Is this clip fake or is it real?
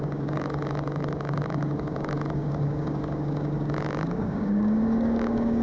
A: fake